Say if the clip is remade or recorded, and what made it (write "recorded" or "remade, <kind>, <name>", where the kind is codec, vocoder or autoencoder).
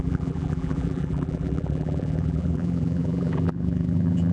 remade, vocoder, BigVGAN v2